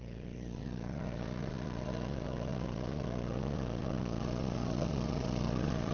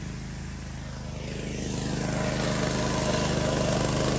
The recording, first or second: second